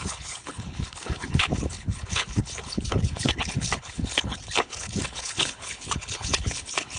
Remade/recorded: remade